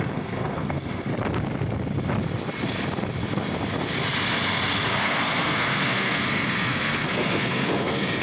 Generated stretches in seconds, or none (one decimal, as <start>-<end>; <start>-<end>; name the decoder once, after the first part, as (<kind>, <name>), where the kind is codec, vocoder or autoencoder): 0.0-1.1 (codec, SNAC); 5.0-8.2